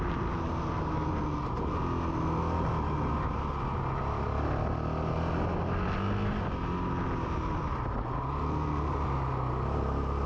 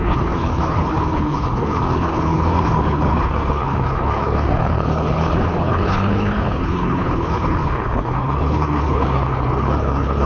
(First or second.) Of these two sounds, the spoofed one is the second